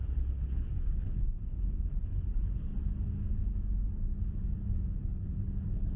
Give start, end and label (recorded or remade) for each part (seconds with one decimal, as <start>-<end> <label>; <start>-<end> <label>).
0.0-2.7 remade; 2.7-5.0 recorded; 5.0-6.0 remade